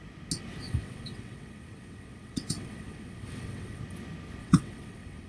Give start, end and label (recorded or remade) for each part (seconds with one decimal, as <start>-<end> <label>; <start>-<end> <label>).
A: 0.0-0.6 recorded; 0.6-3.8 remade; 3.8-4.4 recorded; 4.4-5.3 remade